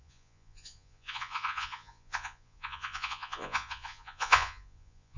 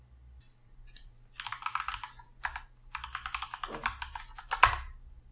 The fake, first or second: first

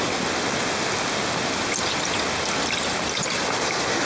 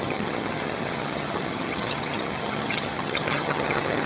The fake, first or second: second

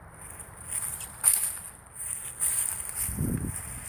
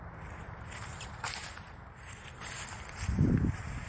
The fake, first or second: second